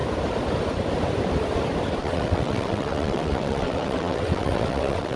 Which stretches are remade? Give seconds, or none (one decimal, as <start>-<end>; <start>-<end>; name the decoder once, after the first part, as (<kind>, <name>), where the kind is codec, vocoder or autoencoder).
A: 2.0-5.2 (vocoder, WaveNeXt)